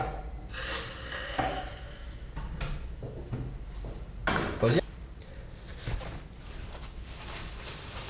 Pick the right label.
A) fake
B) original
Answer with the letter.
B